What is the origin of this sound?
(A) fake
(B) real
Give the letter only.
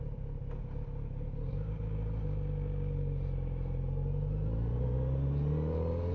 B